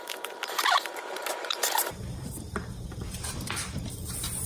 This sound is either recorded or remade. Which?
remade